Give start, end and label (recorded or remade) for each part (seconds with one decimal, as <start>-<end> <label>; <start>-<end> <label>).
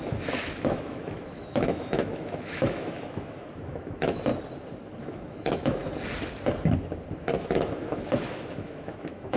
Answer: 0.0-4.3 remade; 4.3-5.0 recorded; 5.0-5.8 remade; 5.8-7.4 recorded; 7.4-9.4 remade